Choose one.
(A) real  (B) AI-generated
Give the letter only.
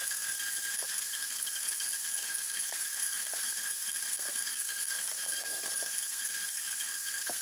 B